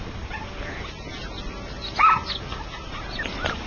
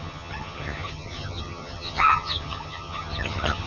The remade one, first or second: second